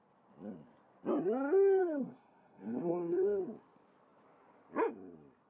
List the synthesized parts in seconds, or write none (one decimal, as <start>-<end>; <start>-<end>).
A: 1.8-3.4